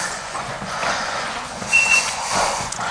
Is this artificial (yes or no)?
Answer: yes